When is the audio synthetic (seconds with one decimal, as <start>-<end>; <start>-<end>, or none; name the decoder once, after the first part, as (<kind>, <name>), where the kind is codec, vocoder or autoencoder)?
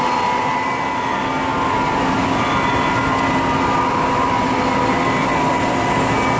none